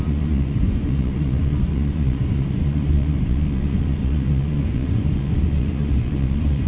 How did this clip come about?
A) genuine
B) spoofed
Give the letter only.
B